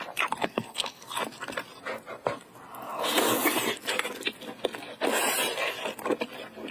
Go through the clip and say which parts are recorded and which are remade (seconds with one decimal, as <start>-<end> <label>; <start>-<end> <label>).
0.0-0.4 recorded; 0.4-1.1 remade; 1.1-6.7 recorded